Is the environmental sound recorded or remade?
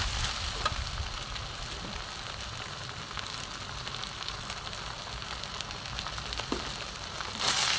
recorded